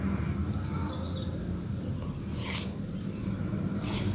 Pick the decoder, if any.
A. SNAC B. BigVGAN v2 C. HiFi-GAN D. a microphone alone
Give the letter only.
D